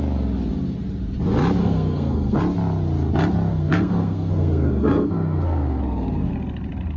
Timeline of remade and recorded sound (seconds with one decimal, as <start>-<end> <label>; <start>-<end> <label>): 0.0-1.6 recorded; 1.6-2.4 remade; 2.4-3.5 recorded; 3.5-6.3 remade; 6.3-7.0 recorded